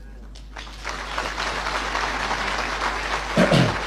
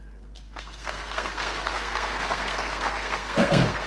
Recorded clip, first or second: first